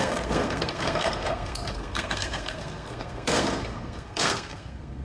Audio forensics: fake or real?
fake